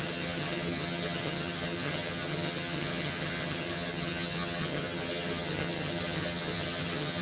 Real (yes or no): no